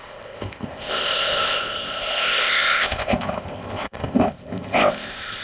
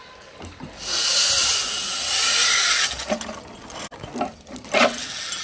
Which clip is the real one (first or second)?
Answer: second